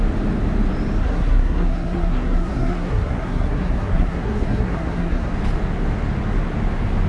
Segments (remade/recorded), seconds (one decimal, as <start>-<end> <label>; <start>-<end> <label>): 0.0-1.0 recorded; 1.0-5.3 remade; 5.3-7.1 recorded